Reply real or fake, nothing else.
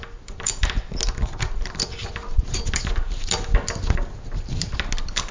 real